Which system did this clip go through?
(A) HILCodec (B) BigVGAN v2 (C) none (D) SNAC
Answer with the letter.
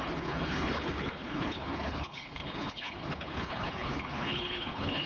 A